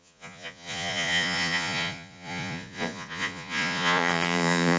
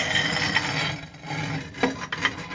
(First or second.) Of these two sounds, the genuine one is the second